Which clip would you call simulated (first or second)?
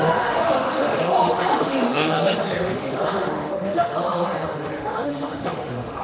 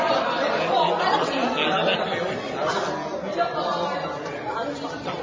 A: first